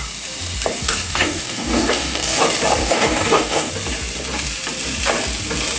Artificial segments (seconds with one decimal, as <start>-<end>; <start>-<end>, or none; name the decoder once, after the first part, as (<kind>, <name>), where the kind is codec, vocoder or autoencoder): 0.8-2.4 (codec, DAC); 2.8-3.7